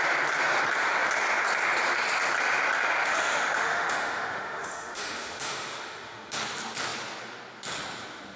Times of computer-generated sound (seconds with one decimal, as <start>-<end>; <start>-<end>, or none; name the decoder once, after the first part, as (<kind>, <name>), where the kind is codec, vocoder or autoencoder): 3.0-6.4 (autoencoder, DAC-VAE)